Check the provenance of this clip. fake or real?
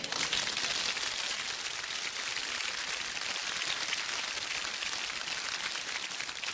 real